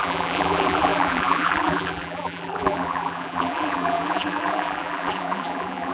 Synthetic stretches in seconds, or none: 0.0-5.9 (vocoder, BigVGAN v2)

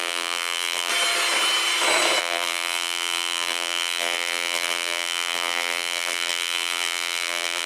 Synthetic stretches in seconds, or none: 0.0-0.9 (vocoder, BigVGAN v2); 2.2-7.7

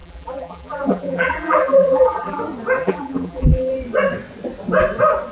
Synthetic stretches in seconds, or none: 0.0-2.4 (vocoder, BigVGAN v2); 2.8-3.7

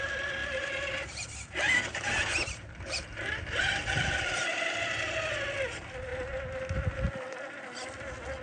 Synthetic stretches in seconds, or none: 0.4-5.1 (vocoder, BigVGAN v2)

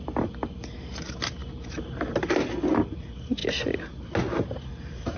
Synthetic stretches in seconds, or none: none

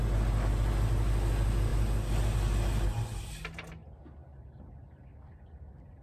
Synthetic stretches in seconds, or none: none

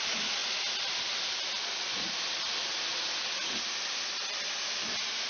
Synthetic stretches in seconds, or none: none

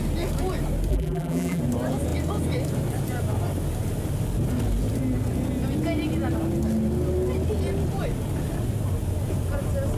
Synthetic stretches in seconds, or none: 0.9-1.6 (vocoder, BigVGAN v2)